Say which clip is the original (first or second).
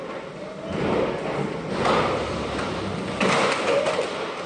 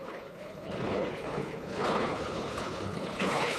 first